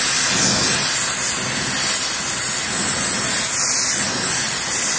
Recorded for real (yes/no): yes